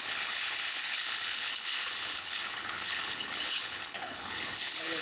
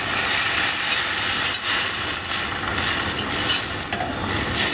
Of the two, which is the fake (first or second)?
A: first